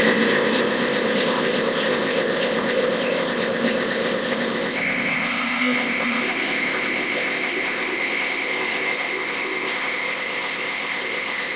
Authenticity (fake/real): fake